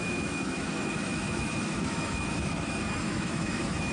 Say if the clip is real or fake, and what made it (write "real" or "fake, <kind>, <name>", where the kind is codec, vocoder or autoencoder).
fake, autoencoder, DAC-VAE